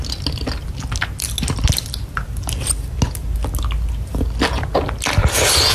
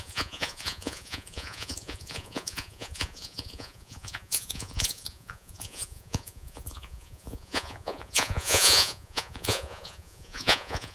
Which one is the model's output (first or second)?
second